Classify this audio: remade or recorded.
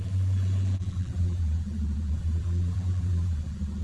remade